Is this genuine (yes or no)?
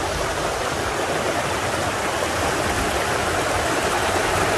yes